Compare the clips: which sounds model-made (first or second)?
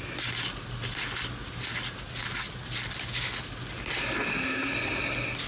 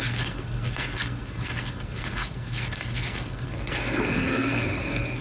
second